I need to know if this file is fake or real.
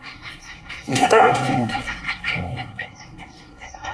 fake